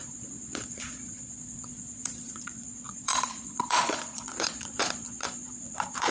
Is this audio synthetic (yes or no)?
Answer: yes